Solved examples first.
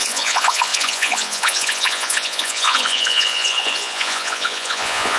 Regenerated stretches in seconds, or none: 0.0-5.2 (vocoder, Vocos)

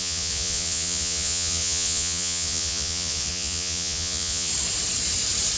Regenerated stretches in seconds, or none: 0.0-4.5 (vocoder, Vocos)

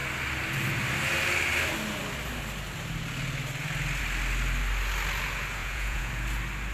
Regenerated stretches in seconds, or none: 5.6-6.1 (vocoder, Vocos)

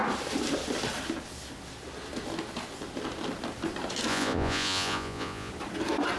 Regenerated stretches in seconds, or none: 4.1-5.5 (vocoder, Vocos)

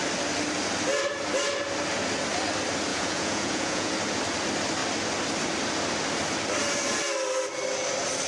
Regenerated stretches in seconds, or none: 2.9-3.9 (vocoder, Vocos)

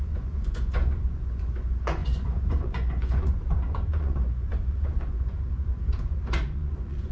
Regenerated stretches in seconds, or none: 0.0-7.1 (vocoder, Vocos)